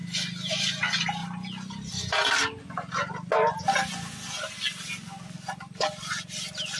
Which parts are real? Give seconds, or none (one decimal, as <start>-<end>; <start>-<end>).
0.0-6.8